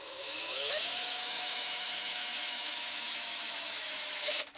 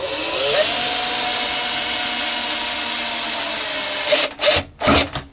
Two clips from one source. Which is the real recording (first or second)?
second